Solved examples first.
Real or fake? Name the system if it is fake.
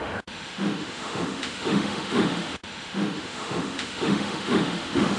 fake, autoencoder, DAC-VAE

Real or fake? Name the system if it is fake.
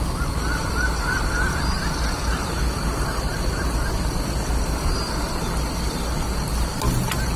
real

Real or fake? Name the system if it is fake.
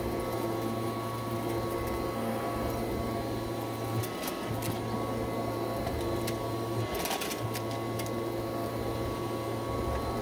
real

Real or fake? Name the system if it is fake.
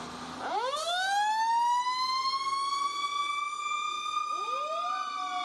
real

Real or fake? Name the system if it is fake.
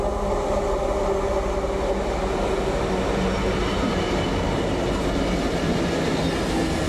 real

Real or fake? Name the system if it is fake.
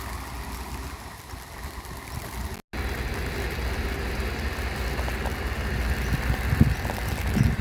real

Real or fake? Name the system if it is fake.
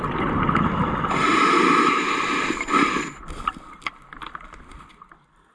real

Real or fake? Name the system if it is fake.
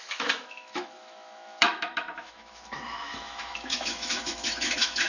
fake, autoencoder, DAC-VAE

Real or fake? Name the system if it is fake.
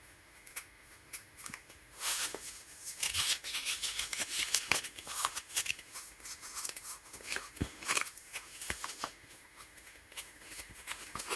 fake, autoencoder, DAC-VAE